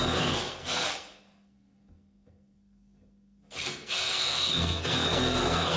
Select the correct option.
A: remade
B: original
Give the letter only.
A